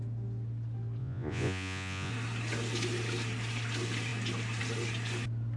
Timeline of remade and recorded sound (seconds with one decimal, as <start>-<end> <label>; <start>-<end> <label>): 0.0-1.0 recorded; 1.0-2.1 remade; 2.1-5.6 recorded